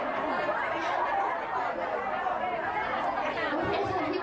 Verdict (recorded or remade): recorded